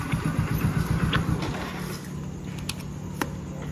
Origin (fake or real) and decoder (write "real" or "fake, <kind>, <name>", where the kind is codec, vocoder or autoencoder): real